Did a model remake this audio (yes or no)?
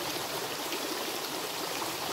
yes